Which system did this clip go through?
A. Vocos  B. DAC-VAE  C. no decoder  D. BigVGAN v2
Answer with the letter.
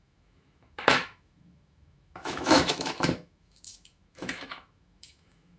B